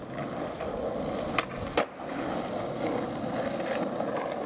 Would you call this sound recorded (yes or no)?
yes